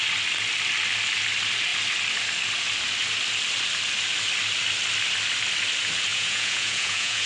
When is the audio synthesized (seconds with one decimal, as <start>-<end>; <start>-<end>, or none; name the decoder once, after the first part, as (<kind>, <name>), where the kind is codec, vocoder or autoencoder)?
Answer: 6.1-7.3 (vocoder, Vocos)